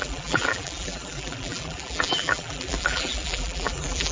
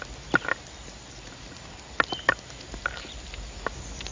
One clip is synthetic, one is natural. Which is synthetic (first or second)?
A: first